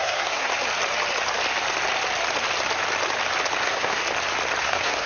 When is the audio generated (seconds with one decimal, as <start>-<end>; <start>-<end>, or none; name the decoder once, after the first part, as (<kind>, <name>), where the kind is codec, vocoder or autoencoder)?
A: 0.0-0.5 (codec, SNAC); 3.6-4.0; 4.6-5.1